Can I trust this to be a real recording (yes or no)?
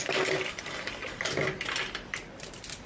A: yes